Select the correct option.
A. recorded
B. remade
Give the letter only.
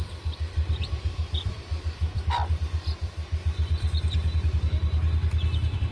B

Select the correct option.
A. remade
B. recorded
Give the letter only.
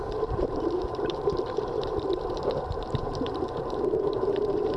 A